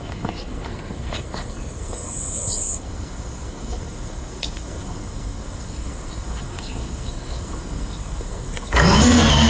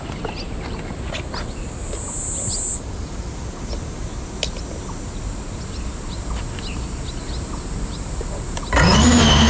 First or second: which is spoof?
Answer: first